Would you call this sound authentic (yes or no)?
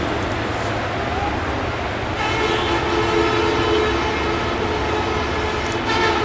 yes